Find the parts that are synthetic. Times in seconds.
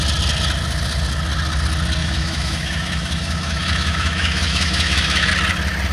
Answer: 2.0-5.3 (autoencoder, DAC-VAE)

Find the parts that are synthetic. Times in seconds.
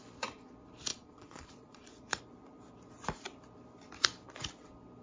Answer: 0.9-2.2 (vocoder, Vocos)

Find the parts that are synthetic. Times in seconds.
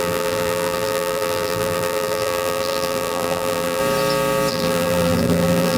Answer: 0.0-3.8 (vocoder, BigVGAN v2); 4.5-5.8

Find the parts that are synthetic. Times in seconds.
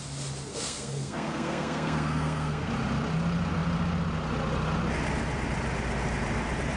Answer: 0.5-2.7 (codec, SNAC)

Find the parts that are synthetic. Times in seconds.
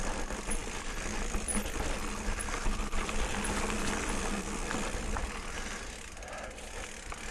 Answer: none